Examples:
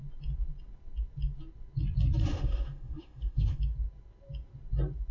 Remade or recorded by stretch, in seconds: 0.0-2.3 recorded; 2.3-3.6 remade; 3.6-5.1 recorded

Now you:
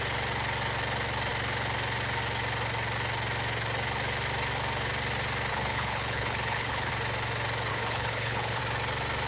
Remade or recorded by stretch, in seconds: 0.0-5.5 recorded; 5.5-6.9 remade; 6.9-7.7 recorded; 7.7-8.6 remade; 8.6-9.3 recorded

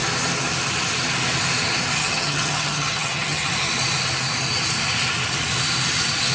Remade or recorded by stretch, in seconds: 0.0-2.0 recorded; 2.0-3.5 remade; 3.5-6.3 recorded

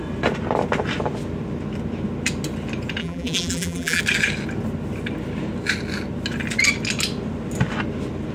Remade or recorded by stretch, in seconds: 0.0-3.0 recorded; 3.0-4.0 remade; 4.0-8.3 recorded

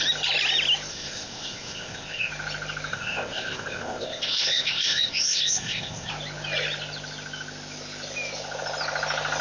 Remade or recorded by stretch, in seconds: 0.0-0.9 recorded; 0.9-2.3 remade; 2.3-2.9 recorded; 2.9-6.1 remade; 6.1-9.4 recorded

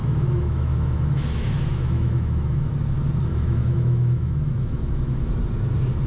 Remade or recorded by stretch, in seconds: 0.0-2.7 remade; 2.7-3.3 recorded; 3.3-5.3 remade; 5.3-6.1 recorded

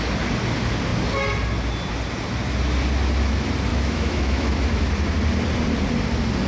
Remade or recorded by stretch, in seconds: 0.0-3.7 recorded; 3.7-4.9 remade; 4.9-6.5 recorded

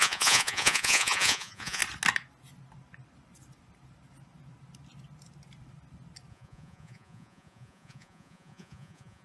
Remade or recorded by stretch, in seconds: 0.0-1.8 remade; 1.8-6.3 recorded; 6.3-9.2 remade